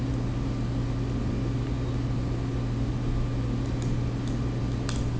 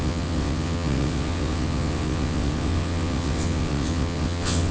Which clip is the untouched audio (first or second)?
first